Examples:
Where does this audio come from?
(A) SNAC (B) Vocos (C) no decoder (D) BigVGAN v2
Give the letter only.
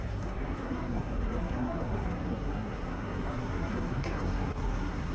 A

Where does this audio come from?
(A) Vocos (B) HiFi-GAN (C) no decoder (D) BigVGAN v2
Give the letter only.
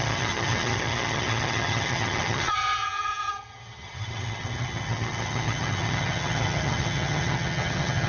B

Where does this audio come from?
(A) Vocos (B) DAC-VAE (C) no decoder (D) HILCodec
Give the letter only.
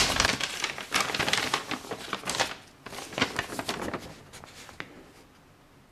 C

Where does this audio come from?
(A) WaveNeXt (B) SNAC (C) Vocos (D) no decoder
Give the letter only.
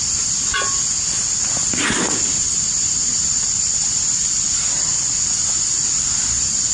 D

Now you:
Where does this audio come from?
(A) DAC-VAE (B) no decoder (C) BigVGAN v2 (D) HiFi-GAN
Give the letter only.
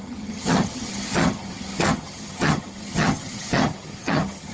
D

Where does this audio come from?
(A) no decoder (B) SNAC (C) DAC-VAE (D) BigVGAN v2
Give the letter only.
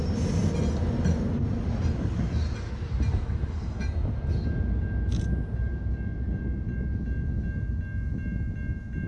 A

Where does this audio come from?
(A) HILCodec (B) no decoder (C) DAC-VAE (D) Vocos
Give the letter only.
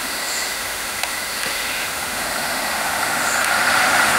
C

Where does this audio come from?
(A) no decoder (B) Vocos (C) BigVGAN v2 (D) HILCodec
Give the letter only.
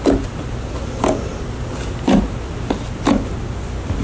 A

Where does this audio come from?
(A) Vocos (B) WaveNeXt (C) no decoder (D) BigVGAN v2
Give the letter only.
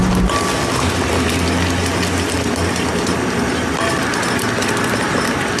C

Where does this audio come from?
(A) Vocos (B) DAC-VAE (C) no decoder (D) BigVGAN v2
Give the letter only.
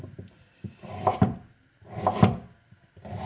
C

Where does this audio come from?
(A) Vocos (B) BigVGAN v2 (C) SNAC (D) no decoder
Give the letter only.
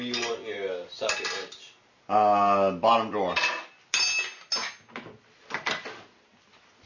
D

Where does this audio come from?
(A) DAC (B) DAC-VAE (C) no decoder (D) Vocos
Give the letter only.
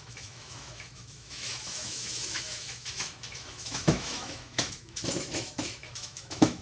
B